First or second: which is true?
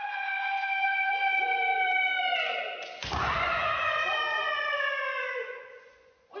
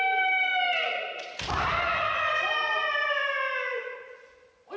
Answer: second